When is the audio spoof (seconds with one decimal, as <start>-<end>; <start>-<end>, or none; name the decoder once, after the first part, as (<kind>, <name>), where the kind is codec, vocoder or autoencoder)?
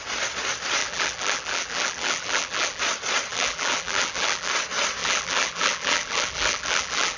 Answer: 0.8-2.8 (vocoder, BigVGAN v2); 3.3-4.5; 5.0-7.2